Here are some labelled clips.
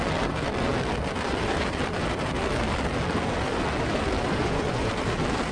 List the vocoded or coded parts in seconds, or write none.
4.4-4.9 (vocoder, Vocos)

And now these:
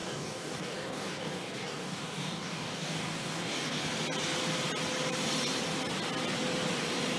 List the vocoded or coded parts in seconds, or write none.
0.0-3.8 (codec, DAC)

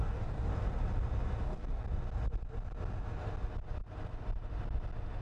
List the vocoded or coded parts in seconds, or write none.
0.0-0.5 (codec, DAC); 1.4-1.8